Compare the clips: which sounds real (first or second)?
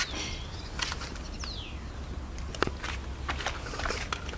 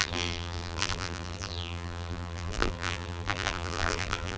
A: first